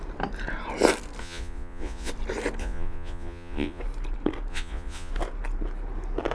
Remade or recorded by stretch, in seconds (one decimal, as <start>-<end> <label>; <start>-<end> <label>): 0.0-1.2 recorded; 1.2-2.1 remade; 2.1-2.6 recorded; 2.6-3.8 remade; 3.8-4.5 recorded; 4.5-5.1 remade; 5.1-6.3 recorded